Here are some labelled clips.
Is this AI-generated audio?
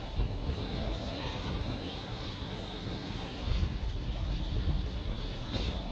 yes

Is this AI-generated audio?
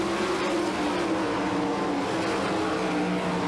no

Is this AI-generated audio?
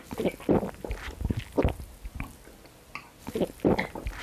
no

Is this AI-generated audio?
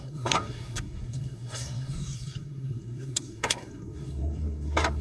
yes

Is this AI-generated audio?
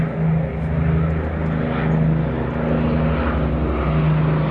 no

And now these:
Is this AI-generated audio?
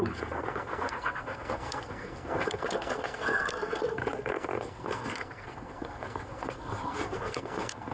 yes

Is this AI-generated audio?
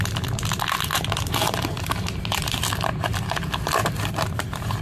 no